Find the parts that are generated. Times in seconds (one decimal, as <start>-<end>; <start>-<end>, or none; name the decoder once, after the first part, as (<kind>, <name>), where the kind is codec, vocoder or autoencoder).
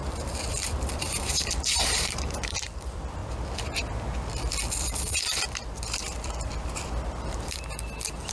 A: 0.0-3.2 (vocoder, BigVGAN v2); 5.0-8.3